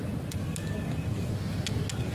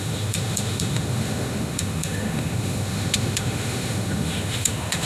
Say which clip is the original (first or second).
first